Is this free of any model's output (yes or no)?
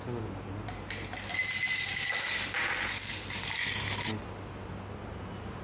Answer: yes